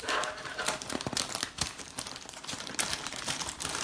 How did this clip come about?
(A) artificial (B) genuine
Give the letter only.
A